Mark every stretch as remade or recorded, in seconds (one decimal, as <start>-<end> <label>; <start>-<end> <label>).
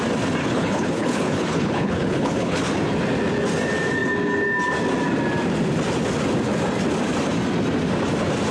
0.0-0.4 recorded; 0.4-2.6 remade; 2.6-8.5 recorded